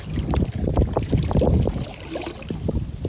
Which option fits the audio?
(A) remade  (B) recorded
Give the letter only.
B